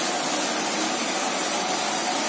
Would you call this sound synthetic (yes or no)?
no